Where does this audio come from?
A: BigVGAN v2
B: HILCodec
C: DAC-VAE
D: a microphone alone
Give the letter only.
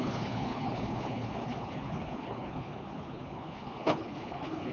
B